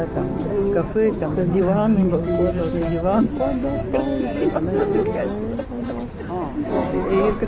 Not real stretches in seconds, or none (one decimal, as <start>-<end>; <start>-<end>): 1.2-2.9